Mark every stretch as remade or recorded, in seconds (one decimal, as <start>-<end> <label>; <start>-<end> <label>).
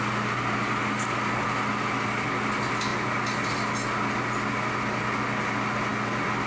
0.0-6.5 recorded